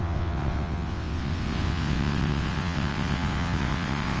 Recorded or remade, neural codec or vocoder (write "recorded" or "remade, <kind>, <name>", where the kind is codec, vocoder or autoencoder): remade, vocoder, WaveNeXt